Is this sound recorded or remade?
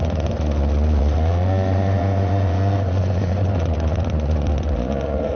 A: remade